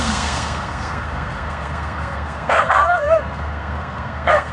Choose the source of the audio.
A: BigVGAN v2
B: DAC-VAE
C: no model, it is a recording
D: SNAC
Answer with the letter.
D